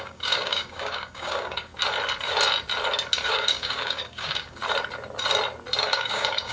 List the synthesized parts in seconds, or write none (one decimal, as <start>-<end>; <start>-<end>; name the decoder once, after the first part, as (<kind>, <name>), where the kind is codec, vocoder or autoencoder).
0.0-1.7 (codec, DAC); 3.3-4.6; 5.8-6.5